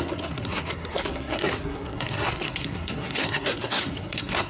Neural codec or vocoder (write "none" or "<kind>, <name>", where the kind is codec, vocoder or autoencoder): codec, SNAC